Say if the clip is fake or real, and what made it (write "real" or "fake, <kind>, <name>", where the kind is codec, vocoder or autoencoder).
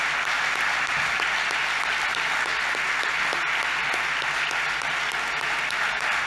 real